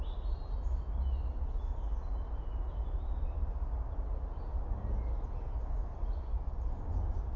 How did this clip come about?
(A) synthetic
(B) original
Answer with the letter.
B